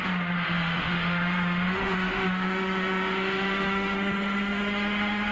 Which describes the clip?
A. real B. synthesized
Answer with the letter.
B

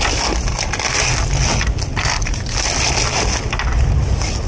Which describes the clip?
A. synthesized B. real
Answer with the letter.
B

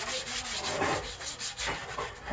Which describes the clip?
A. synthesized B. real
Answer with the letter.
B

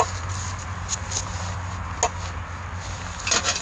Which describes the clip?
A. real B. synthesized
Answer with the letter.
A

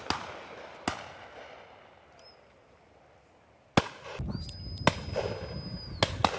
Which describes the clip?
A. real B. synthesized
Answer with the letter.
A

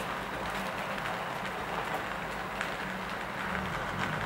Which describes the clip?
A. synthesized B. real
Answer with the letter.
B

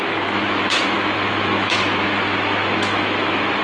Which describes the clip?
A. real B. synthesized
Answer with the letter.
B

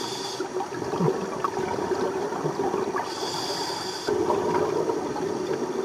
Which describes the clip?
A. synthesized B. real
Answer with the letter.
B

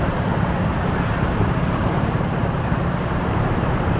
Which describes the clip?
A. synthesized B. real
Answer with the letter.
A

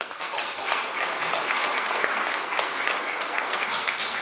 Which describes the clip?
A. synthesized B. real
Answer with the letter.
A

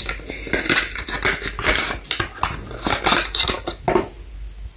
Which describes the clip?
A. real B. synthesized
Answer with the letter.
A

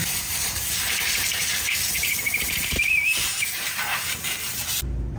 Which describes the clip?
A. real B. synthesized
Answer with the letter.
B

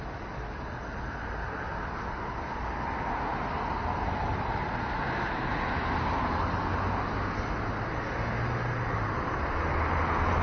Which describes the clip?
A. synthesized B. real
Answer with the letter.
B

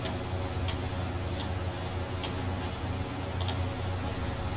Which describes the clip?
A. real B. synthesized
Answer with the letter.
A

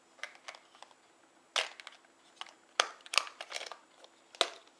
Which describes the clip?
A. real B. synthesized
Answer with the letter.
A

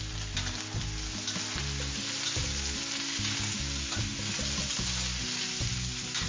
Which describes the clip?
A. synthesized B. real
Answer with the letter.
B